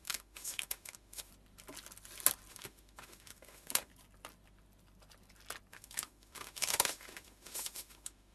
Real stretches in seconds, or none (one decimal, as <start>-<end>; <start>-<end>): 1.3-2.5; 3.9-5.7